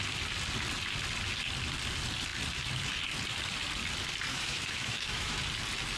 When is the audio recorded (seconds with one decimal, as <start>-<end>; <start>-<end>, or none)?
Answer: 0.0-4.3; 5.4-6.0